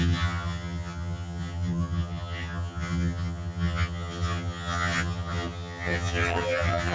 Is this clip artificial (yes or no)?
yes